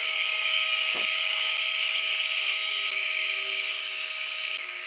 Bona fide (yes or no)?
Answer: no